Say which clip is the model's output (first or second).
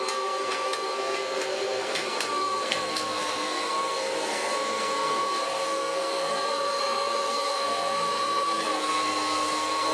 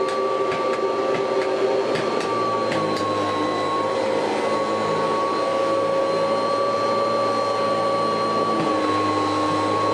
first